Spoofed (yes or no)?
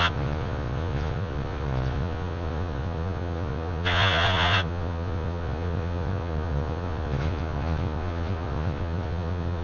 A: yes